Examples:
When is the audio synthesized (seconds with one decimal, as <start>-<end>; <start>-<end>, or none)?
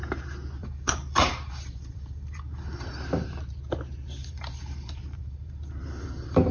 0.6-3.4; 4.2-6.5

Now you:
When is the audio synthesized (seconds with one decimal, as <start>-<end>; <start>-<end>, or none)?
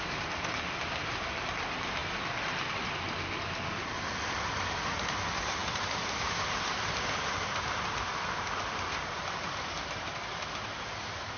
none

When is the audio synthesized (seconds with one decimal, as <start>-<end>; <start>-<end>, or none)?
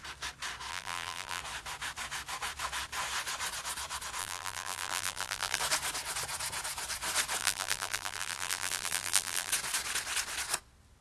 0.7-1.4; 4.2-5.6; 7.4-9.5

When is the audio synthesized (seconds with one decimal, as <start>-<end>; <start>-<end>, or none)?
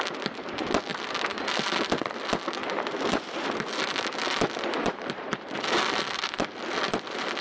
2.6-7.0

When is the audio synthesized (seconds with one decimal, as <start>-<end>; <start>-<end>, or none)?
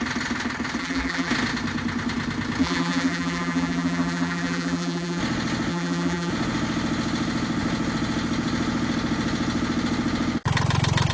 0.8-1.3; 2.6-5.2; 5.7-6.3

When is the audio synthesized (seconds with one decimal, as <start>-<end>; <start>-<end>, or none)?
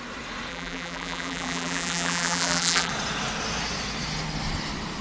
0.5-2.9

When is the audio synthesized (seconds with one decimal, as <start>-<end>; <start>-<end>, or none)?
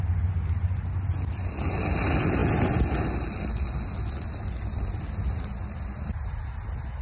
none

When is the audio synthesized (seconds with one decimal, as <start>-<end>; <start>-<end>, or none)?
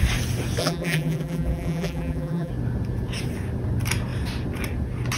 0.6-2.5